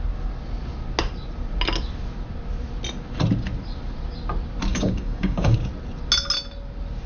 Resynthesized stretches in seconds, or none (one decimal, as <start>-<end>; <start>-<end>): 4.7-5.7